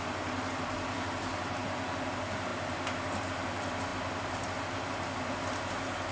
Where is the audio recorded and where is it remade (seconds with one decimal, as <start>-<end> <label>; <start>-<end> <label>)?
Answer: 0.0-6.1 recorded